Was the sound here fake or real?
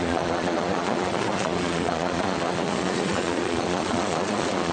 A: fake